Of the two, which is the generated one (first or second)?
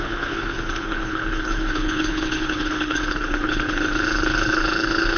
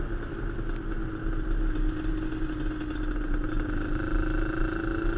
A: first